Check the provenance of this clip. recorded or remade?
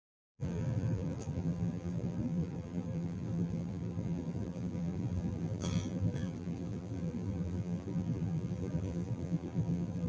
remade